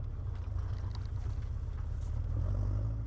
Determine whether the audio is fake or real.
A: real